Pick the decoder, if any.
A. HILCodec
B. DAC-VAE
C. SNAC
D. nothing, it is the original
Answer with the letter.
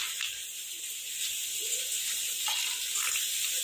D